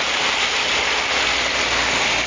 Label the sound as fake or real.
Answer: real